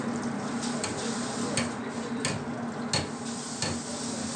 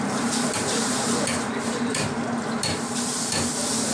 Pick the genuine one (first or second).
first